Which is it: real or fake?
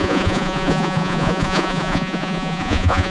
fake